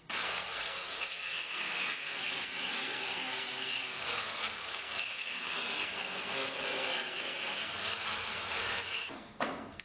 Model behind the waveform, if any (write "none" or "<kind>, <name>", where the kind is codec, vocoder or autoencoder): codec, SNAC